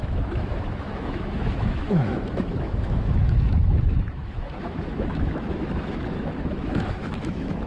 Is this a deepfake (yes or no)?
yes